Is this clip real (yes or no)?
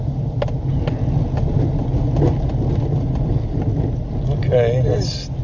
yes